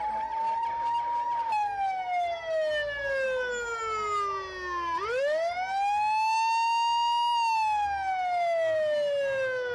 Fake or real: real